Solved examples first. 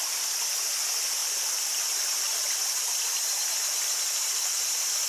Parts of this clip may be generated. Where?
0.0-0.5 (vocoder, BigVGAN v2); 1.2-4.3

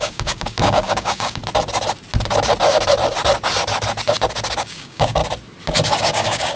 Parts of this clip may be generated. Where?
0.0-1.4 (codec, DAC); 4.6-5.2; 6.0-6.6

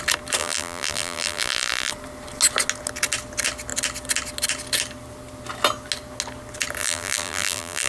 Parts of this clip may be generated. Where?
0.4-1.9 (vocoder, BigVGAN v2); 6.8-7.9